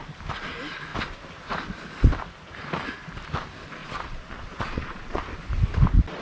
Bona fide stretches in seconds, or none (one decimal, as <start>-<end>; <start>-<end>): 0.0-3.8; 5.2-6.2